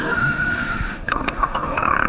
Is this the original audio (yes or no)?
no